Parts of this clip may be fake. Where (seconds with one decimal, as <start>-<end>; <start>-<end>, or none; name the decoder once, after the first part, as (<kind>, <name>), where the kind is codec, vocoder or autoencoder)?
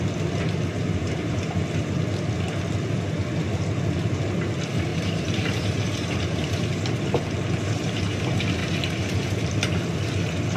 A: 1.0-1.8 (vocoder, BigVGAN v2); 4.9-8.2; 8.6-9.4